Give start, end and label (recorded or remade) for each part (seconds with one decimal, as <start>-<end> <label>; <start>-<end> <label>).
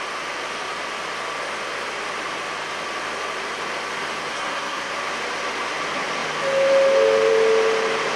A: 0.0-4.3 recorded; 4.3-4.9 remade; 4.9-8.2 recorded